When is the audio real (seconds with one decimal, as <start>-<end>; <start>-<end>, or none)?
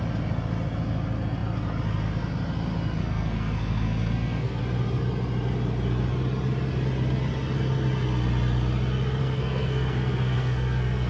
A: 0.0-3.0; 4.6-9.2